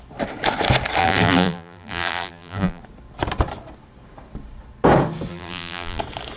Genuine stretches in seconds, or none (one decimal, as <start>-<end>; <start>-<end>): 0.0-1.0; 2.8-5.3; 6.0-6.4